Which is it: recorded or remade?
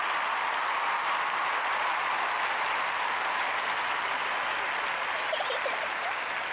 recorded